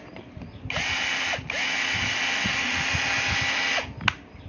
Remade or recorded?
recorded